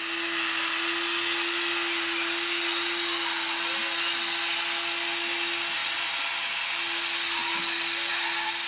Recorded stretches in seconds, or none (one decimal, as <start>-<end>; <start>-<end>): 0.0-8.7